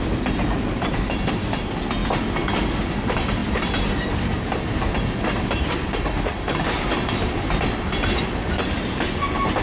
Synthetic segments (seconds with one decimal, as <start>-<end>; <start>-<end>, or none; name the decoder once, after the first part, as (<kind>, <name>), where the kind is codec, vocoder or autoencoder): none